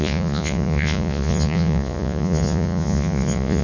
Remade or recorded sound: remade